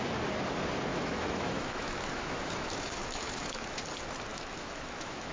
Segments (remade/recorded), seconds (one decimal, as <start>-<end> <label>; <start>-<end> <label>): 0.0-0.9 recorded; 0.9-3.8 remade; 3.8-4.3 recorded; 4.3-5.3 remade

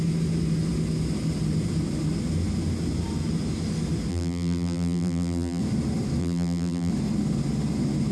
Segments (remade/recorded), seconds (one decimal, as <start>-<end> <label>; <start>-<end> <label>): 0.0-4.1 recorded; 4.1-5.6 remade; 5.6-6.2 recorded; 6.2-6.9 remade; 6.9-8.1 recorded

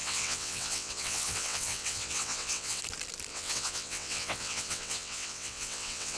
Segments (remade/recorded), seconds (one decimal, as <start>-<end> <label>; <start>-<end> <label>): 0.0-2.8 remade; 2.8-3.3 recorded; 3.3-6.2 remade

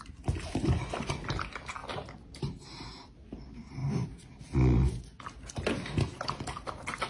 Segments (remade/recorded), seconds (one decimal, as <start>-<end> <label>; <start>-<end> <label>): 0.0-7.1 recorded

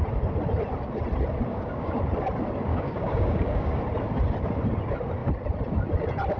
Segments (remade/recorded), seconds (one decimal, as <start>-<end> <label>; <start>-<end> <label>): 0.0-1.5 recorded; 1.5-2.0 remade; 2.0-2.7 recorded; 2.7-3.8 remade; 3.8-6.4 recorded